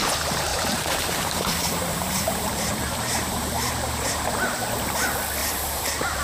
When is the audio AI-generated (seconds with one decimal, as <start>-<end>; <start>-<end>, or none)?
0.5-4.2; 5.4-6.2